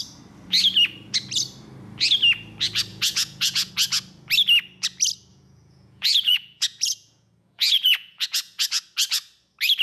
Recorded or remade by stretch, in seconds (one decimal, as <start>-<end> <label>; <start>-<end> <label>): 0.0-2.9 recorded; 2.9-3.7 remade; 3.7-5.3 recorded; 5.3-8.6 remade; 8.6-9.8 recorded